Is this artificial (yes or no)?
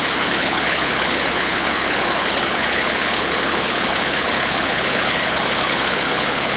yes